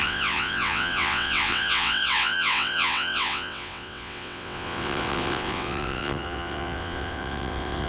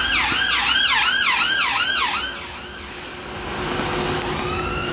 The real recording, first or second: second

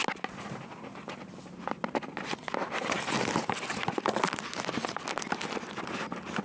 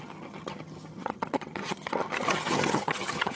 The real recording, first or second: first